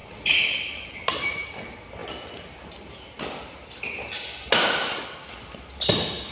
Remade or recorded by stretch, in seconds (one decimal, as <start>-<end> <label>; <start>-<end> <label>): 0.0-6.3 recorded